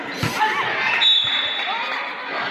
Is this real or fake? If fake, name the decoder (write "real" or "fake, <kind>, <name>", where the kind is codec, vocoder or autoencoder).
real